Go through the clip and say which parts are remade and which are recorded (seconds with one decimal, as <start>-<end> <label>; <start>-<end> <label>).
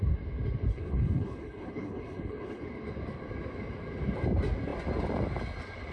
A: 0.0-0.7 recorded; 0.7-2.6 remade; 2.6-5.9 recorded